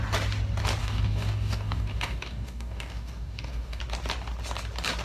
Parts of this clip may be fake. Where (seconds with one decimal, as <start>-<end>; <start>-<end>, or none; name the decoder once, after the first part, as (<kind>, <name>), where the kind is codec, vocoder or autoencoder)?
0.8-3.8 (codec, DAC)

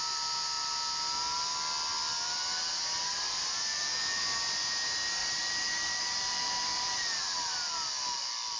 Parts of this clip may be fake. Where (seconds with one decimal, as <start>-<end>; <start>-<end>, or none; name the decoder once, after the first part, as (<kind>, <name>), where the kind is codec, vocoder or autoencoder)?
3.7-4.6 (vocoder, BigVGAN v2); 5.2-7.2

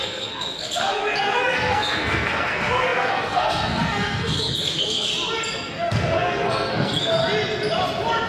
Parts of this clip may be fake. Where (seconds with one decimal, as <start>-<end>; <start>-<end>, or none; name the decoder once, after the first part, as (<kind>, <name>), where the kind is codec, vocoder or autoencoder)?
0.0-5.1 (codec, SNAC); 5.7-7.2

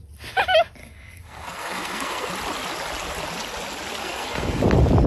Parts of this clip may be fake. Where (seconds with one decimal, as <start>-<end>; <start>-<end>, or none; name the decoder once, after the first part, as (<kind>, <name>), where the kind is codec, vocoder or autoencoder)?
0.8-2.3 (codec, SNAC); 4.0-4.6

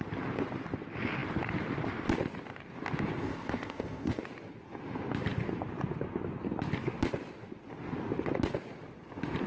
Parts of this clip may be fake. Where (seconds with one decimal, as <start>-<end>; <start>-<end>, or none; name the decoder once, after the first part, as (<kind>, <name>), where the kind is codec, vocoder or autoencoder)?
3.2-4.2 (codec, ZipCodec)

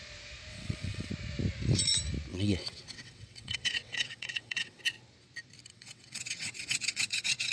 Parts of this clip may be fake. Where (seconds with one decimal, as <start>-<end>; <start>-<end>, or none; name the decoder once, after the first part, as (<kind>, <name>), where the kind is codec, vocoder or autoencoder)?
0.5-1.1 (vocoder, WaveNeXt); 2.3-4.8; 5.7-7.5

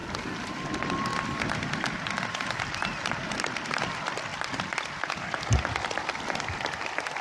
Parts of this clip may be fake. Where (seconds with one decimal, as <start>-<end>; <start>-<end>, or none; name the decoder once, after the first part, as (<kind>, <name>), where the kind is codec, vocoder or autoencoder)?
0.5-7.2 (vocoder, BigVGAN v2)